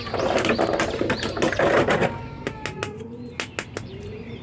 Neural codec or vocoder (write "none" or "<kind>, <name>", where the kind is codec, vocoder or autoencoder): none